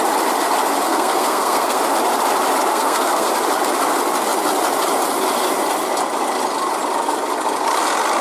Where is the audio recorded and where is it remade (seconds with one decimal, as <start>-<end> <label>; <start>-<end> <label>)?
0.0-0.9 recorded; 0.9-1.8 remade; 1.8-2.7 recorded; 2.7-3.3 remade; 3.3-8.2 recorded